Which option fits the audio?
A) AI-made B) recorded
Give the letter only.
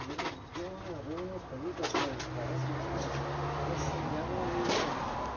B